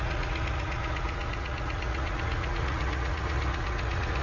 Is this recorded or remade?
remade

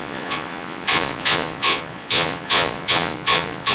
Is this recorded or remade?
remade